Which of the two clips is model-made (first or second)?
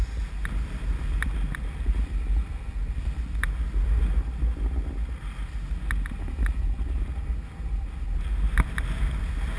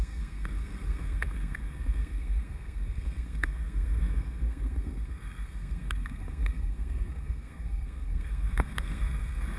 second